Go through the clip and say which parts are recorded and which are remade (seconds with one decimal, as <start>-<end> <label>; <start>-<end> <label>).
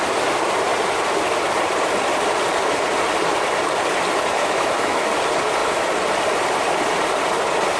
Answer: 0.0-4.4 recorded; 4.4-5.1 remade; 5.1-7.8 recorded